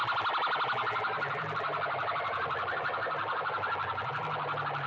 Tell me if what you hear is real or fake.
real